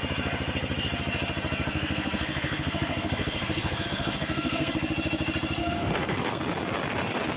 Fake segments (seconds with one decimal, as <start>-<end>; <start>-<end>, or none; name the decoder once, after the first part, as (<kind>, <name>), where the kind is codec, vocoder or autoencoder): 1.7-4.7 (codec, SNAC); 5.6-6.4